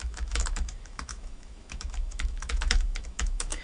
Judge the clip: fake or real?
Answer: fake